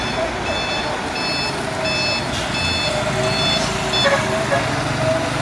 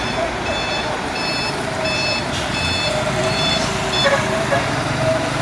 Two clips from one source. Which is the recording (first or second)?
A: first